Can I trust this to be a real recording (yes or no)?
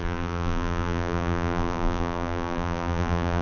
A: no